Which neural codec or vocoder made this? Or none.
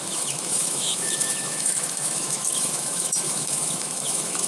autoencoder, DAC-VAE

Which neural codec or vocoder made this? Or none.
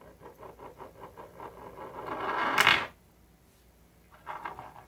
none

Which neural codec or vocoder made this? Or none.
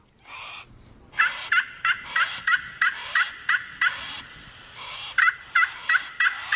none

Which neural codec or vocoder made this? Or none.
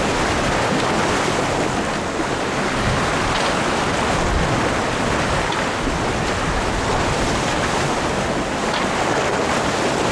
none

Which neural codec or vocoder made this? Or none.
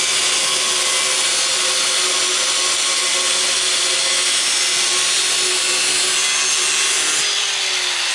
none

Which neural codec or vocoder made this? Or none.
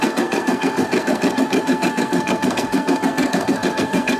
codec, SNAC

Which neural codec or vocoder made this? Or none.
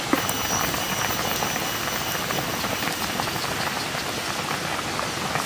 none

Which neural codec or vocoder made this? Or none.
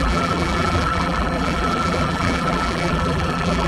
vocoder, BigVGAN v2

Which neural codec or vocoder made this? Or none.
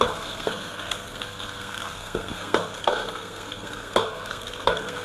codec, SNAC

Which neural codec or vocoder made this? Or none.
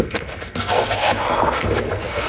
codec, SNAC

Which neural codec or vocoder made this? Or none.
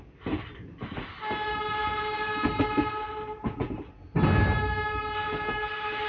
none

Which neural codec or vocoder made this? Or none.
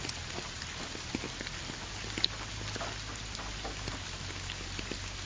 none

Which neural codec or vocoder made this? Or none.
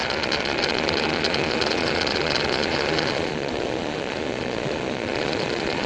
vocoder, Vocos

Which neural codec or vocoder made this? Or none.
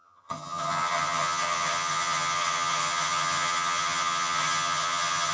vocoder, HiFi-GAN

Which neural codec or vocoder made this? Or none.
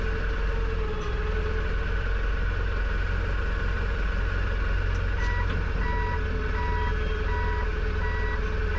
none